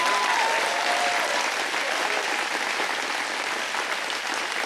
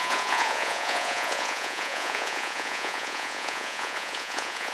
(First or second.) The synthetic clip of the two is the second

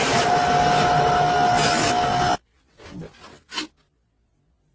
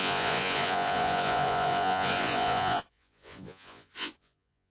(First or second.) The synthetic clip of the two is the second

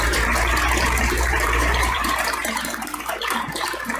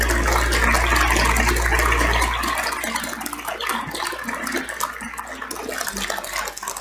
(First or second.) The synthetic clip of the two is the first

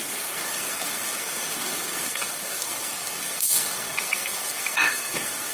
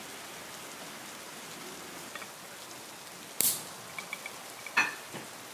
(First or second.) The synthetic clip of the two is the first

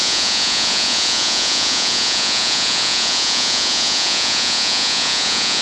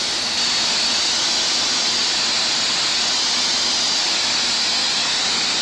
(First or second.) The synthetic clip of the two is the first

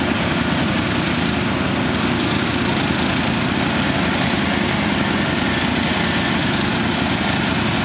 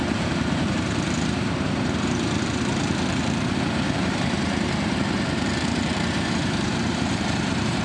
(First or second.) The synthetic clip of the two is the second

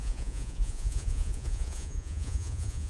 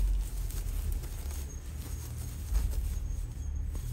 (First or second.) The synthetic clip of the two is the first